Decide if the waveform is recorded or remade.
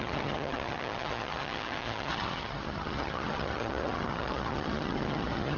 remade